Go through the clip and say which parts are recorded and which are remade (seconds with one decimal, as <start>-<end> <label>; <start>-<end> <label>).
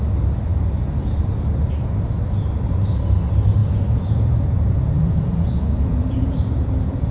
0.0-3.6 recorded; 3.6-7.1 remade